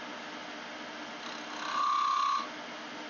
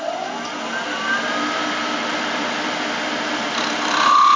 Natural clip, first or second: first